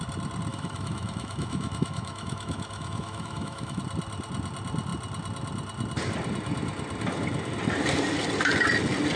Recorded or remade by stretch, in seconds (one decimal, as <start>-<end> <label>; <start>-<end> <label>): 0.0-0.5 recorded; 0.5-3.8 remade; 3.8-9.2 recorded